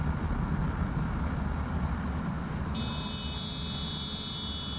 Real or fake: real